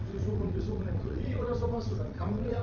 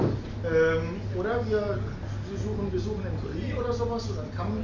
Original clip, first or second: second